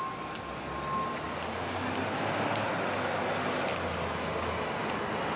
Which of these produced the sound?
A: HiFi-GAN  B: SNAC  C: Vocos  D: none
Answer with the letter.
D